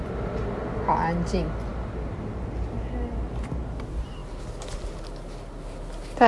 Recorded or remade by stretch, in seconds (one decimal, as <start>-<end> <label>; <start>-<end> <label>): 0.0-6.3 recorded